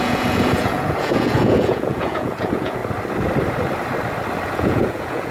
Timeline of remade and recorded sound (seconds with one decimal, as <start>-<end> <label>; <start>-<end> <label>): 0.0-2.8 remade; 2.8-4.5 recorded; 4.5-5.3 remade